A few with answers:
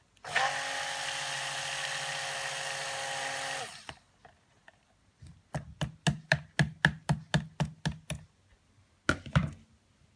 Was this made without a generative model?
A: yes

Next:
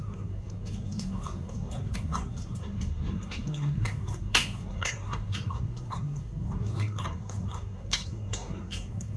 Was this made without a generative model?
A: no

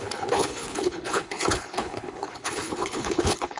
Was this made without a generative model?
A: no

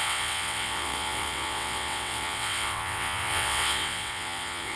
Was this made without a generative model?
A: no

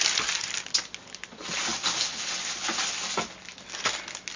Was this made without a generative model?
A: yes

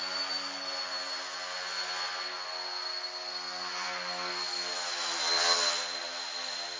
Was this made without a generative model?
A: yes